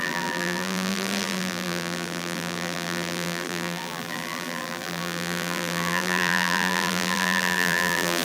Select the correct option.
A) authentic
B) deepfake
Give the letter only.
B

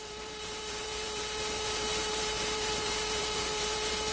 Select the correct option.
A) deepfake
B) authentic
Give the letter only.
A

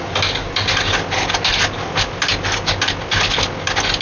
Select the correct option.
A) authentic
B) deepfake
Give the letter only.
A